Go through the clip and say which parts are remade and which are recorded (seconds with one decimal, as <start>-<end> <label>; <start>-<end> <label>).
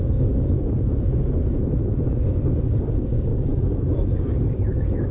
0.0-0.9 remade; 0.9-2.8 recorded; 2.8-3.3 remade; 3.3-3.9 recorded; 3.9-5.1 remade